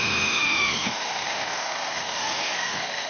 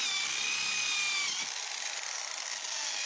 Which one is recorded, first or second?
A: second